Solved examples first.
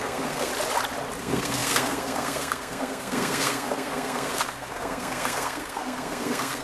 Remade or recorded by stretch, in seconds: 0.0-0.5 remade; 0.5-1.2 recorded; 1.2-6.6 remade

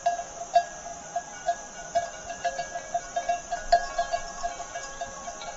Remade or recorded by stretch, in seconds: 0.0-0.9 recorded; 0.9-2.5 remade; 2.5-5.6 recorded

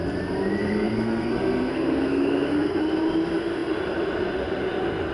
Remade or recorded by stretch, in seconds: 0.0-0.6 recorded; 0.6-2.8 remade; 2.8-5.1 recorded

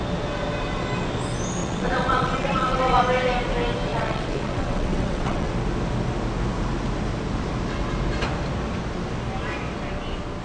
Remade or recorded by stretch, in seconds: 0.0-1.6 recorded; 1.6-3.0 remade; 3.0-3.9 recorded; 3.9-5.5 remade; 5.5-10.4 recorded

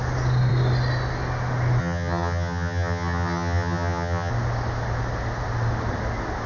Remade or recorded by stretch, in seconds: 0.0-1.8 recorded; 1.8-4.3 remade; 4.3-6.5 recorded

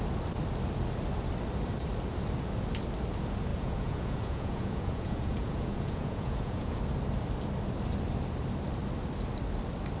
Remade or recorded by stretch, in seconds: 0.0-3.5 recorded; 3.5-6.8 remade; 6.8-10.0 recorded

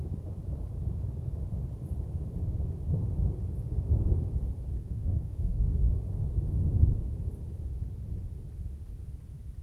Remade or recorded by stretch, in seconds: 0.0-4.8 recorded; 4.8-5.9 remade; 5.9-9.6 recorded

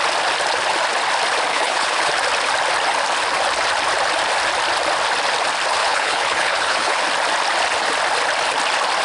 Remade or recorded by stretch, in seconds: 0.0-1.5 recorded; 1.5-2.1 remade; 2.1-5.8 recorded; 5.8-7.0 remade; 7.0-9.0 recorded